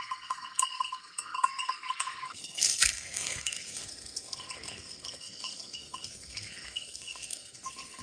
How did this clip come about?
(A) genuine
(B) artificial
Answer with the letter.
B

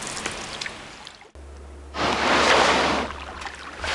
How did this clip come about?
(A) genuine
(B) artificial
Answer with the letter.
A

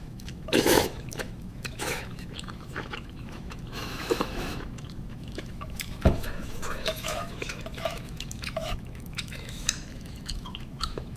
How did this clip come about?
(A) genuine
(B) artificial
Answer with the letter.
B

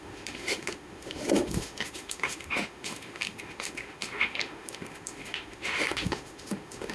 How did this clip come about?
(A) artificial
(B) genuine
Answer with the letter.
A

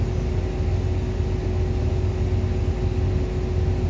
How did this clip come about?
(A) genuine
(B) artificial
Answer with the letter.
A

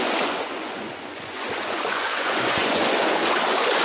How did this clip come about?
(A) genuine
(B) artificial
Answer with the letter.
B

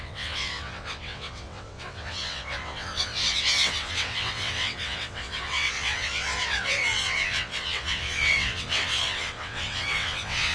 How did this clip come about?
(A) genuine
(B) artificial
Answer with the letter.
B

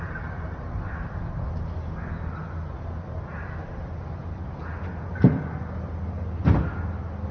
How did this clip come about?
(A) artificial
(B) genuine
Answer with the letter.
B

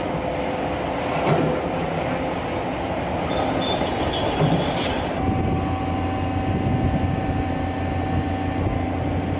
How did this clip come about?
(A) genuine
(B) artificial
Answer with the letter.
A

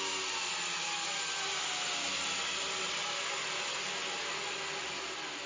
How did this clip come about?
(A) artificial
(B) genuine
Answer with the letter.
B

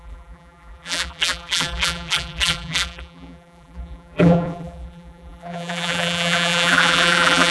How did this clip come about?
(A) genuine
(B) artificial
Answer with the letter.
B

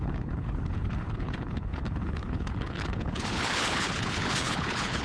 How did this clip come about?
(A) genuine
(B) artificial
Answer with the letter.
B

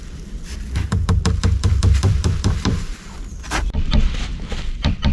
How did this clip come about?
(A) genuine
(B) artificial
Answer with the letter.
B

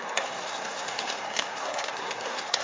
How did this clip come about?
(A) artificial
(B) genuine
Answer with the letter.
A